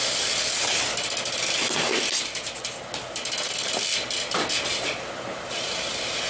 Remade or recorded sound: recorded